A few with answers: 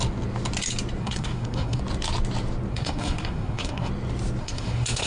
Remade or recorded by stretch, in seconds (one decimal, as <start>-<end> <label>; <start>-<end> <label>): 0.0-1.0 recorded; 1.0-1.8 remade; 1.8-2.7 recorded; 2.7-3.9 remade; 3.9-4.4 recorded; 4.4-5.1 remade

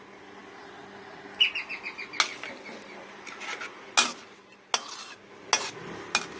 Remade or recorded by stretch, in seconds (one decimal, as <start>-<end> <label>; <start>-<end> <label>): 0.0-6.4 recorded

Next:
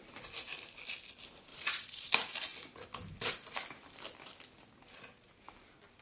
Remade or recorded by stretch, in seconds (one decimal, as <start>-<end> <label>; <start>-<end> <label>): 0.0-1.5 recorded; 1.5-2.1 remade; 2.1-6.0 recorded

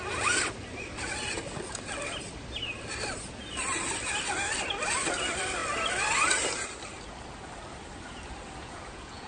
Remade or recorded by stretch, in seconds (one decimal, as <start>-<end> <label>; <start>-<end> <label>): 0.0-8.6 recorded; 8.6-9.3 remade

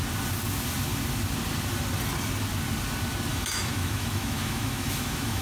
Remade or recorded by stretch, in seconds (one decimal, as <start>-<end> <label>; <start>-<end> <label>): 0.0-3.3 recorded; 3.3-5.4 remade

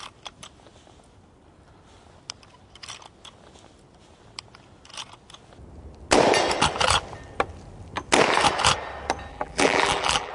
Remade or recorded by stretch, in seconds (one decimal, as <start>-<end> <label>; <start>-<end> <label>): 0.0-9.3 recorded; 9.3-10.3 remade

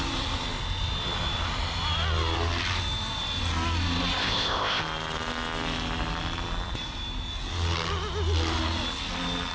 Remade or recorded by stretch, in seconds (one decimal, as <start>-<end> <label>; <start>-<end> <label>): 0.0-4.2 recorded; 4.2-4.8 remade; 4.8-9.5 recorded